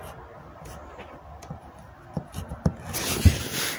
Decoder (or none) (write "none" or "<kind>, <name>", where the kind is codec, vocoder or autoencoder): none